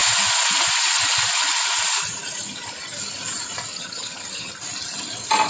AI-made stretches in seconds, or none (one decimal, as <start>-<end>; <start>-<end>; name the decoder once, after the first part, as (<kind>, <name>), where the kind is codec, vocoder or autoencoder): 3.7-4.5 (vocoder, HiFi-GAN)